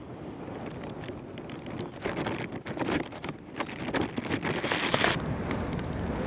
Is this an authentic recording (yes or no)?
yes